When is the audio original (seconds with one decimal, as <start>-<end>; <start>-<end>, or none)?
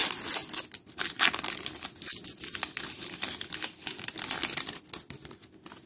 0.0-5.9